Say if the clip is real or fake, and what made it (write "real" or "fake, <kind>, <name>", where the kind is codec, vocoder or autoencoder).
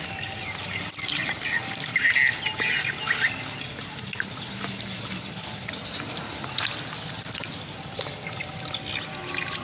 real